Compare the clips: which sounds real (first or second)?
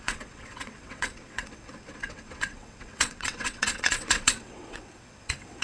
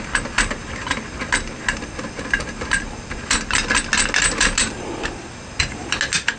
second